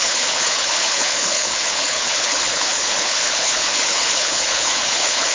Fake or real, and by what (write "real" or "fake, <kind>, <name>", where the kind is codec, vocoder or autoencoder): fake, codec, HILCodec